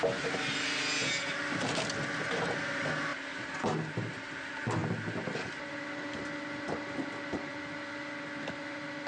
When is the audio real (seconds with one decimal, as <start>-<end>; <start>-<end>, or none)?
0.0-9.1